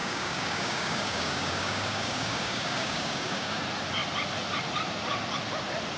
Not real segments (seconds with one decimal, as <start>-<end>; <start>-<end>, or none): 0.0-3.6